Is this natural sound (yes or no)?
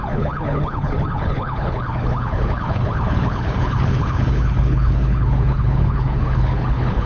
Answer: no